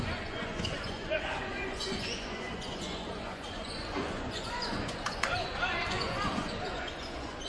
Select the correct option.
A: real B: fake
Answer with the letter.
B